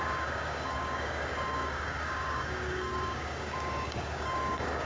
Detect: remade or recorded remade